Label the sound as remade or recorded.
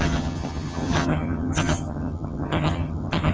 remade